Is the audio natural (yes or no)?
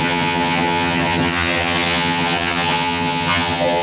no